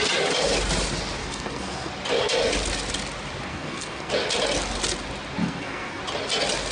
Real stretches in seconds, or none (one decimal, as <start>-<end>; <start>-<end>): 0.0-1.2; 1.9-3.5; 4.1-5.4; 6.0-6.7